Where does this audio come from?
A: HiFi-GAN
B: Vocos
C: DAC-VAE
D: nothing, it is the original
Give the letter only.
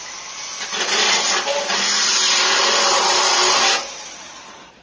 D